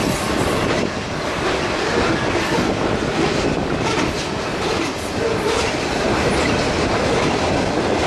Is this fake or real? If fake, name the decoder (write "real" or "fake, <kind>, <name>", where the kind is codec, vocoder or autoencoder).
real